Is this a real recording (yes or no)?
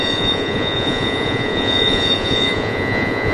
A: no